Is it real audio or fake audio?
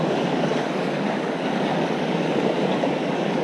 fake